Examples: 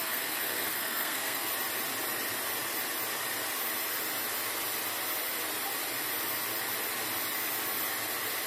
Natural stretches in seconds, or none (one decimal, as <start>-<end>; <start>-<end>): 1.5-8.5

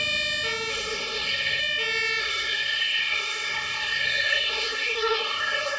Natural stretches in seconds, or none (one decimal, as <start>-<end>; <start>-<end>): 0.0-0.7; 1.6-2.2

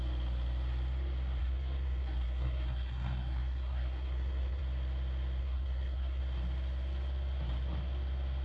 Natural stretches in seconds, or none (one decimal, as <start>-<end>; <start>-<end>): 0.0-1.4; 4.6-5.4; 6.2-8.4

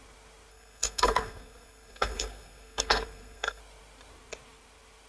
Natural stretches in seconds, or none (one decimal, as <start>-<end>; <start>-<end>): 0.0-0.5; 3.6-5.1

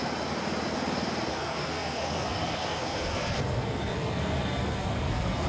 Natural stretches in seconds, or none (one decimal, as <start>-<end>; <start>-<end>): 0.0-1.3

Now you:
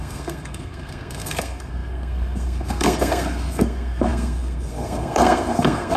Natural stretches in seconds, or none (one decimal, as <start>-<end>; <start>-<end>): none

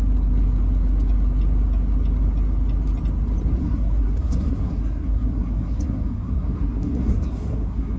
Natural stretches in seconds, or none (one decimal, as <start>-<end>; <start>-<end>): 0.0-3.6